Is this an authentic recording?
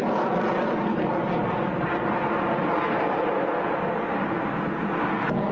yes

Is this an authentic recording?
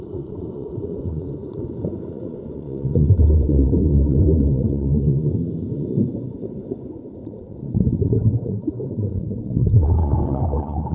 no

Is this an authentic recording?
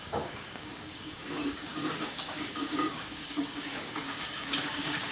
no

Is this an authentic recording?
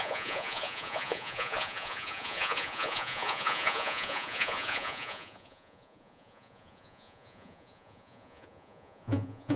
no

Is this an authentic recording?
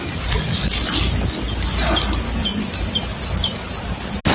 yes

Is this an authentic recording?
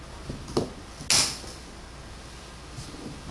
yes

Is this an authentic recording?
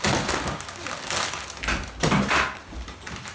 yes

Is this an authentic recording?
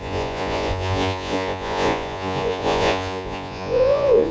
no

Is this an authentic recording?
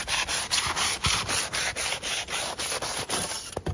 yes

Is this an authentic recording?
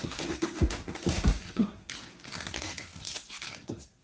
no